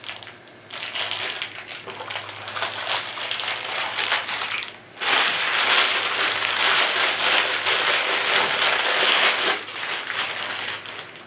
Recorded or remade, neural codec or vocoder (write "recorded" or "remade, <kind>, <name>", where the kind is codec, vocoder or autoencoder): recorded